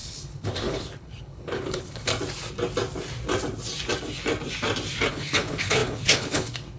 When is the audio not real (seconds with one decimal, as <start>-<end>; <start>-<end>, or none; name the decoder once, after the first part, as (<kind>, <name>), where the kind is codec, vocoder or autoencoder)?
0.0-2.1 (codec, HILCodec); 5.1-6.8